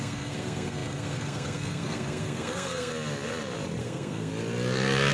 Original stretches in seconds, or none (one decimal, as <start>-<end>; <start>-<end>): 2.9-3.8; 4.3-5.1